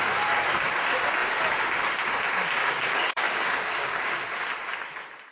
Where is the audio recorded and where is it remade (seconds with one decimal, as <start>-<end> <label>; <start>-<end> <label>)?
0.0-2.6 recorded; 2.6-4.2 remade; 4.2-5.3 recorded